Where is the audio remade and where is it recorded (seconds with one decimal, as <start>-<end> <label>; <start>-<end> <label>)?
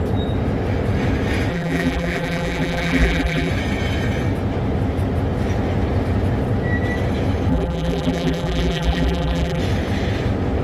0.0-1.5 recorded; 1.5-3.5 remade; 3.5-7.5 recorded; 7.5-9.6 remade; 9.6-10.6 recorded